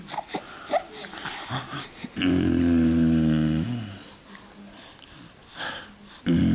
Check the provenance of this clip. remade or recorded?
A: recorded